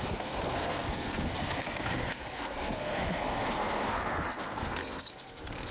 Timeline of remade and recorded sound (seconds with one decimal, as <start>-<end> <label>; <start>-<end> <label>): 0.0-5.7 remade

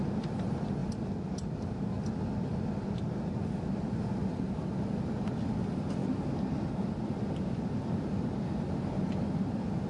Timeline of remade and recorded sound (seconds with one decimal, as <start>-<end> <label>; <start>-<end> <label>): 0.0-9.9 recorded

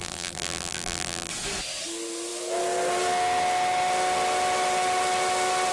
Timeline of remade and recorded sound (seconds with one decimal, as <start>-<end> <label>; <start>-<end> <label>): 0.0-1.3 remade; 1.3-5.7 recorded